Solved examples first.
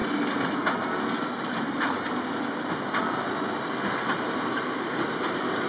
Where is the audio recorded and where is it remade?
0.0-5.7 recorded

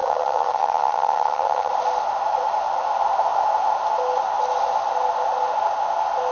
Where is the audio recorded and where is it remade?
0.0-1.7 remade; 1.7-6.3 recorded

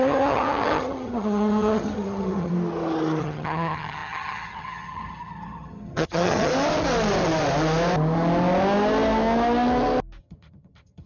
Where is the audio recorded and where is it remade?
0.0-2.5 remade; 2.5-3.2 recorded; 3.2-6.5 remade; 6.5-10.2 recorded; 10.2-11.1 remade

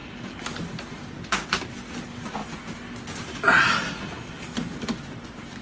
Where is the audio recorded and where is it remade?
0.0-5.6 recorded

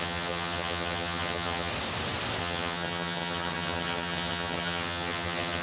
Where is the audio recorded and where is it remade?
0.0-1.7 remade; 1.7-2.4 recorded; 2.4-5.6 remade

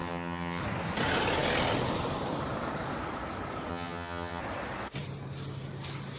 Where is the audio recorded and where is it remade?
0.0-0.6 remade; 0.6-3.7 recorded; 3.7-4.4 remade; 4.4-6.2 recorded

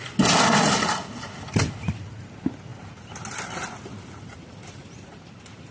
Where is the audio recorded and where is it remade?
0.0-5.7 recorded

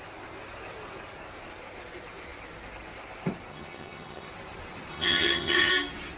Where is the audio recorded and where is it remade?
0.0-3.5 recorded; 3.5-4.3 remade; 4.3-4.9 recorded; 4.9-5.7 remade; 5.7-6.2 recorded